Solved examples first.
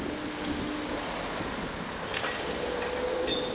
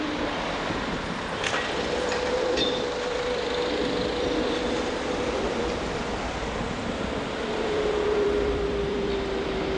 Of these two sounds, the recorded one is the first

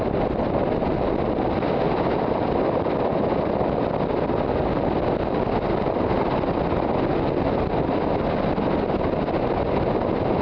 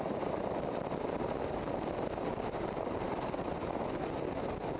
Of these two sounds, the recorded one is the first